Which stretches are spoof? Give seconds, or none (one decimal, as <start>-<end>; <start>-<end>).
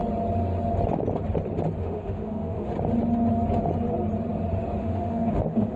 1.8-2.7; 4.8-5.8